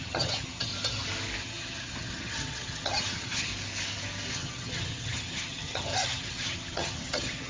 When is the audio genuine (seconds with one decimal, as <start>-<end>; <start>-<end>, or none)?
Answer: 0.7-1.4; 3.5-4.3